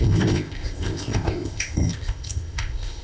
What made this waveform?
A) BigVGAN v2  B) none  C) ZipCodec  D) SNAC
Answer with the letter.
C